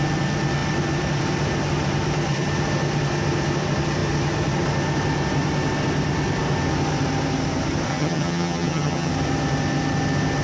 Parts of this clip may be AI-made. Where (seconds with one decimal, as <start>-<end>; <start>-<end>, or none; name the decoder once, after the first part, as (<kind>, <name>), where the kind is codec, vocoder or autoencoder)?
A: 7.9-9.1 (vocoder, HiFi-GAN)

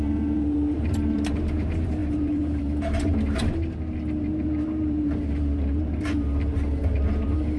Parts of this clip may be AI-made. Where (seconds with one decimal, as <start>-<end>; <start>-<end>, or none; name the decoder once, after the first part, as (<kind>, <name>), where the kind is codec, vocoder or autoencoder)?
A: 0.0-3.4 (vocoder, BigVGAN v2); 4.2-7.6

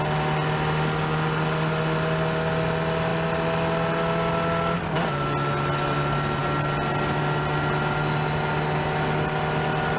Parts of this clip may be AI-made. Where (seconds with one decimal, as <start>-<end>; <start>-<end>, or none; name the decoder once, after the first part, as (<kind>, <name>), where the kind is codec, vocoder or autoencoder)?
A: none